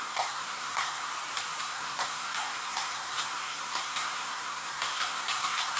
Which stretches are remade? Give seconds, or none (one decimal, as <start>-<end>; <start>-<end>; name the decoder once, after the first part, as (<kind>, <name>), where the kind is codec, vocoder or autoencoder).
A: 0.0-1.1 (codec, SNAC); 1.6-5.8